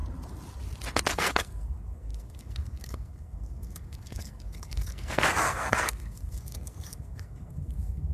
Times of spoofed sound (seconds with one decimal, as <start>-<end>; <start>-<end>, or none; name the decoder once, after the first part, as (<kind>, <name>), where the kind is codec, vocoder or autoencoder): 1.1-8.1 (codec, SNAC)